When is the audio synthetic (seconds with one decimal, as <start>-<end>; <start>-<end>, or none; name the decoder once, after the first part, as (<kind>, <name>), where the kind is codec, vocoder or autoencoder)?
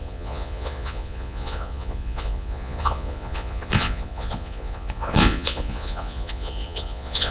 0.0-7.3 (vocoder, Vocos)